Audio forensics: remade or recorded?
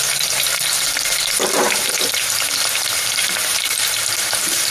remade